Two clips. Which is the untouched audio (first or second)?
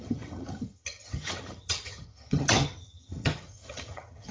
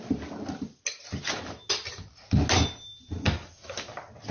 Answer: second